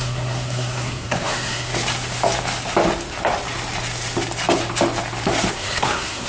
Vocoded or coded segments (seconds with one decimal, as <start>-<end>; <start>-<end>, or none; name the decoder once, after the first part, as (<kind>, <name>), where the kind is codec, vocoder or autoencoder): 0.0-1.7 (codec, SNAC); 5.5-6.3